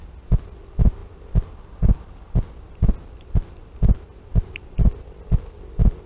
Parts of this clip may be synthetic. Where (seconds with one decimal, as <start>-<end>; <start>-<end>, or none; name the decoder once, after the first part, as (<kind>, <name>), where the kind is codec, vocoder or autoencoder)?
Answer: none